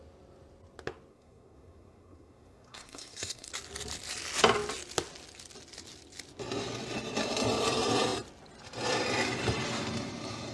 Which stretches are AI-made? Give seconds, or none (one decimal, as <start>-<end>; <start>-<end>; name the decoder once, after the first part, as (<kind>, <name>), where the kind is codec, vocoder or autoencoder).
1.1-3.5 (codec, SNAC)